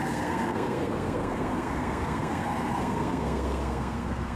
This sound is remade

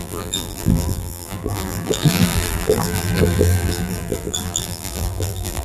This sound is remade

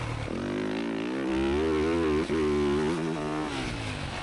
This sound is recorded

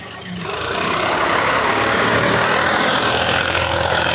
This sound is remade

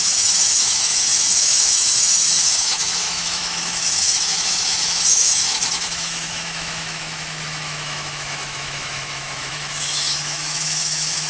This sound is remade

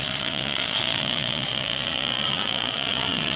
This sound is remade